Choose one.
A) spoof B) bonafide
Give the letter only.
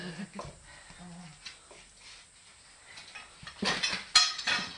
B